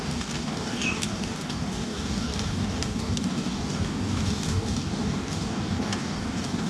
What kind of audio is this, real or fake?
fake